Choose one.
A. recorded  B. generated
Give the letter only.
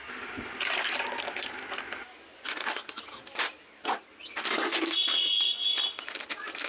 A